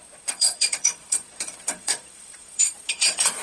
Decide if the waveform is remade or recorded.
remade